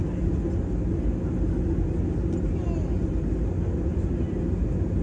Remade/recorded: recorded